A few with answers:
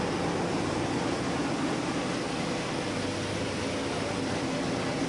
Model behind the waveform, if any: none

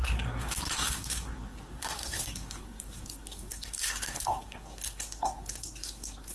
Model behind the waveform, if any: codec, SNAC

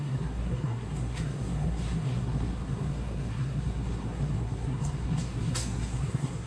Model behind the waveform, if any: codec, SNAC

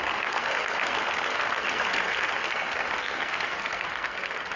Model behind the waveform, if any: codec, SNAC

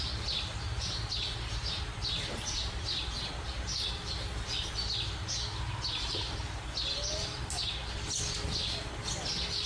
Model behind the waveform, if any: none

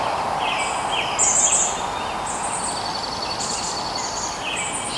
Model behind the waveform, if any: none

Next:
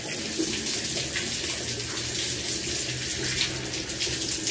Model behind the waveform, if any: none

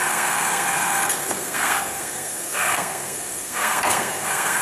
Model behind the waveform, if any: codec, SNAC